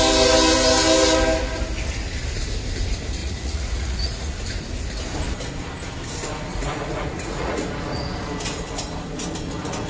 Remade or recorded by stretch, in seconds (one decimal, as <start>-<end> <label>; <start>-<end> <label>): 0.0-3.2 recorded; 3.2-4.3 remade; 4.3-6.5 recorded; 6.5-7.6 remade; 7.6-9.9 recorded